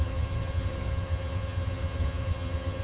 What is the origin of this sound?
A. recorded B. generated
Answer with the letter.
B